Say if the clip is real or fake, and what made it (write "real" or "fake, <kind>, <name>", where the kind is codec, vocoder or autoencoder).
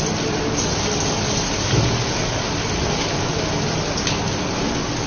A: real